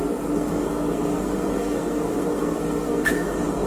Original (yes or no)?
no